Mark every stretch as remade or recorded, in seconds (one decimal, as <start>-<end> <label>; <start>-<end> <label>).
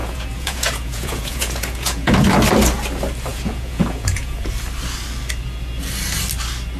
0.0-2.1 remade; 2.1-3.3 recorded; 3.3-4.5 remade; 4.5-6.8 recorded